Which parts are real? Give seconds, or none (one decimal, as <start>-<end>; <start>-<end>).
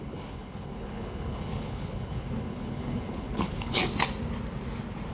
3.8-5.1